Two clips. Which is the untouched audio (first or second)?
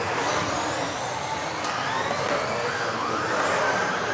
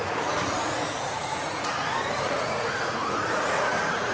first